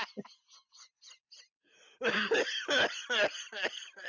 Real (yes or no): yes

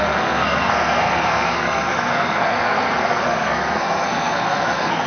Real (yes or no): no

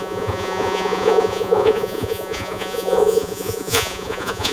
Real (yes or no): no